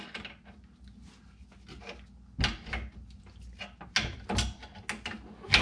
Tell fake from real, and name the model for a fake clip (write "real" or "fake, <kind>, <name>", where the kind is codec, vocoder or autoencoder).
real